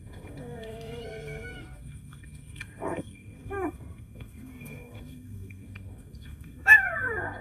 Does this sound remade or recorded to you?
remade